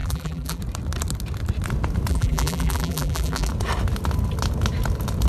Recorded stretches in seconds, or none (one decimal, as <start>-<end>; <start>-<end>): 0.6-2.1; 3.5-5.3